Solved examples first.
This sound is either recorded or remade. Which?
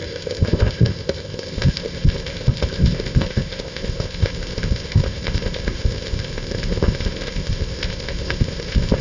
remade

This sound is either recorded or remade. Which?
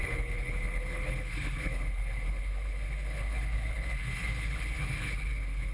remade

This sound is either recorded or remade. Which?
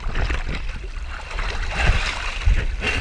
recorded